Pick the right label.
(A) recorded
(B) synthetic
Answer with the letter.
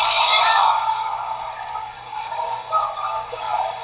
B